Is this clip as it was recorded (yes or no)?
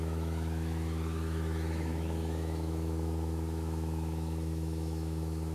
no